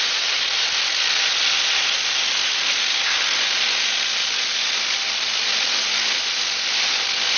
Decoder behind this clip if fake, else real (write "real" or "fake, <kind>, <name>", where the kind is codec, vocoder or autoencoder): real